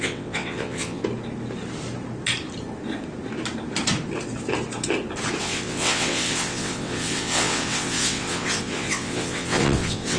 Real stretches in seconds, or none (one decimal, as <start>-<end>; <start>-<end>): 1.0-5.4